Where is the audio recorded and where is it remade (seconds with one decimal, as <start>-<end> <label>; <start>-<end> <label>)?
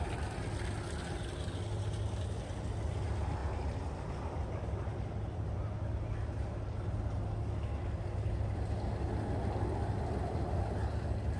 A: 0.0-11.4 recorded